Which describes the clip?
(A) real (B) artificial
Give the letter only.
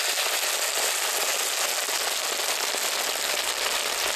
A